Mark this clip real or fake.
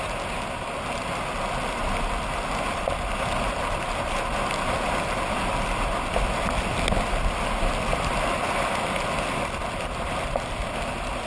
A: real